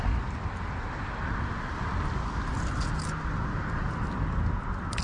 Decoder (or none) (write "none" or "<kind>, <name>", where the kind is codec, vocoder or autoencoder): none